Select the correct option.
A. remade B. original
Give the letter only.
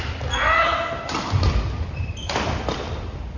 B